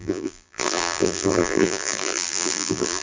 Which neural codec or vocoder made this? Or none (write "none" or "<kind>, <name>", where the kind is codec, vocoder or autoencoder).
vocoder, BigVGAN v2